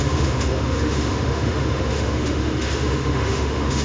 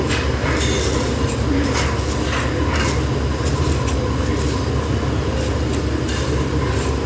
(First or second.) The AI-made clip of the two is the first